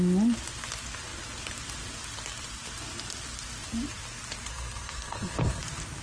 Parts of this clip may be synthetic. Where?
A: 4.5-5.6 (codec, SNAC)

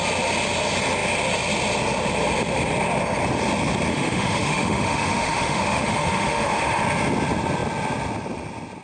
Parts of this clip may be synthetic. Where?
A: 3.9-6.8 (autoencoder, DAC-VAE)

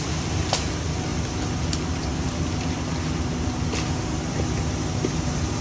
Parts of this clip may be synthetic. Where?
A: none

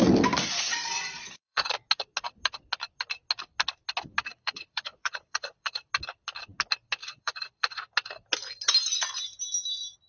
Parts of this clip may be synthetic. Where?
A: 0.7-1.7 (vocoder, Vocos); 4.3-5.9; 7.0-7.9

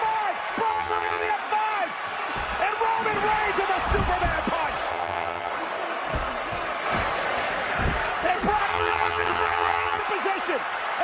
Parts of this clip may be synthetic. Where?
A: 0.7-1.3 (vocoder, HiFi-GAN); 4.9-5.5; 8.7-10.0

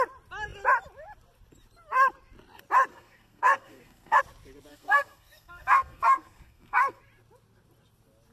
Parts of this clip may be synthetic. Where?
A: 2.9-4.2 (codec, SNAC); 4.7-7.0